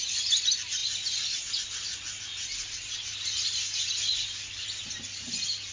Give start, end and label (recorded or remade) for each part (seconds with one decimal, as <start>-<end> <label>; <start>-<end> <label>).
0.0-5.7 recorded